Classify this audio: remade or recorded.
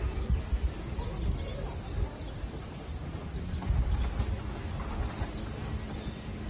recorded